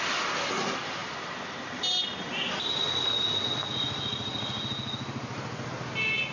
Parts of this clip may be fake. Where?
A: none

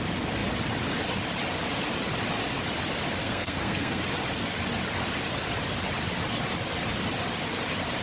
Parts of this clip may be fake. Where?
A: 3.2-4.0 (codec, SNAC)

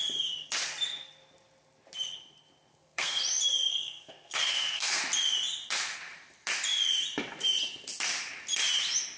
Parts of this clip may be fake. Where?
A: 2.7-3.2 (codec, SNAC); 3.7-5.0

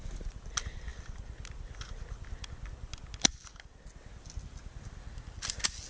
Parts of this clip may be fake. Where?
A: none

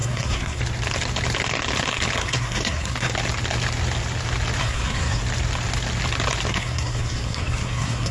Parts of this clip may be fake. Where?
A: 0.0-0.6 (codec, SNAC); 2.2-3.1; 4.6-5.2; 6.5-8.1

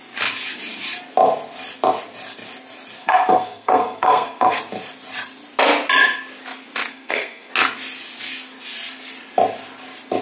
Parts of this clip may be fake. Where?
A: 3.0-4.6 (codec, SNAC); 6.9-7.5

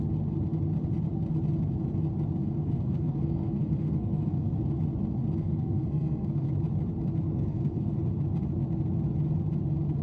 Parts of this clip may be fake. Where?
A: 2.4-4.5 (codec, SNAC); 5.4-6.5; 7.3-7.9